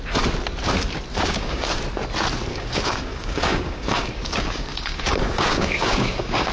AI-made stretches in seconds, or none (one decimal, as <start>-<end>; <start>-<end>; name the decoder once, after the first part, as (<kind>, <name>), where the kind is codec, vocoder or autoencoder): 1.1-1.8 (codec, DAC); 2.5-6.5